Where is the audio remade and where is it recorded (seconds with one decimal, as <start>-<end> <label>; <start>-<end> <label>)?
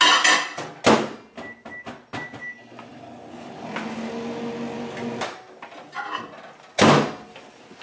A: 0.0-7.8 recorded